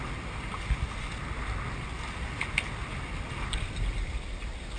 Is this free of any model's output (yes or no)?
yes